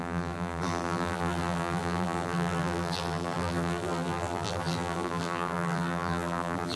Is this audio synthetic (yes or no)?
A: yes